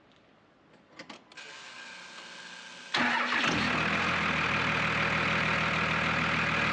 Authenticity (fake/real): real